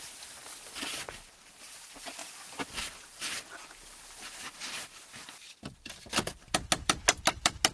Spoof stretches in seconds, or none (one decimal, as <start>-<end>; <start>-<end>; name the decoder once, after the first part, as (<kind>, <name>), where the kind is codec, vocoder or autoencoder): 0.0-2.2 (vocoder, BigVGAN v2); 5.5-7.7